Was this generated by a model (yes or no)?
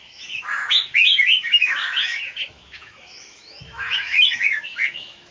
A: yes